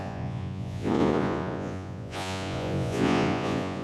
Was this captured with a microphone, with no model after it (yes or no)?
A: no